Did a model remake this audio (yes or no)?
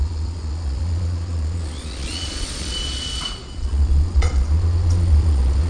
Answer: yes